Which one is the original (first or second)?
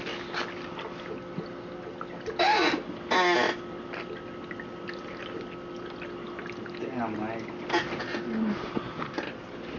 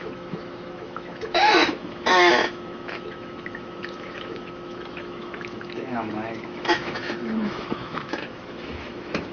first